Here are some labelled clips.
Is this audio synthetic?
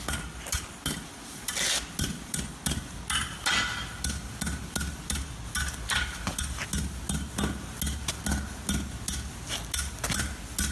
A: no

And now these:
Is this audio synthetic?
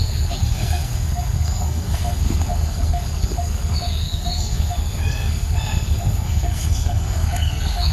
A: yes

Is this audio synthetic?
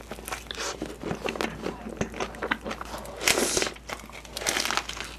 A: no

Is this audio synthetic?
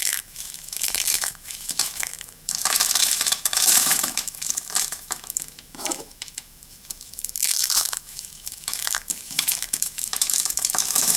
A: yes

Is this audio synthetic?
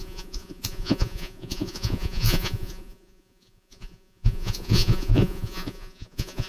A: yes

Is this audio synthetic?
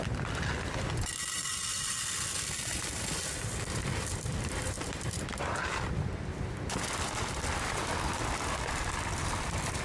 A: yes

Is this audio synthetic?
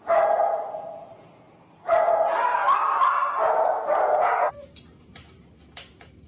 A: no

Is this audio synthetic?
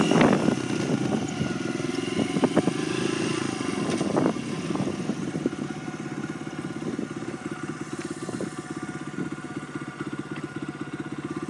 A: no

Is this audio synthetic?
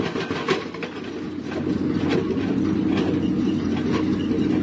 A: no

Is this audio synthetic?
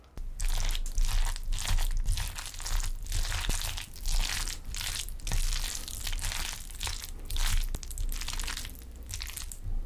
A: no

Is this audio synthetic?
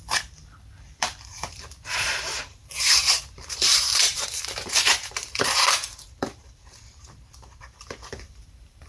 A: yes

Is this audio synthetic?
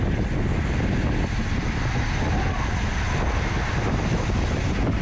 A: no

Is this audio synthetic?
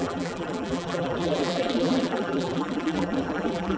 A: yes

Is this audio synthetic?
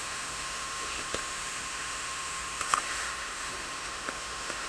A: yes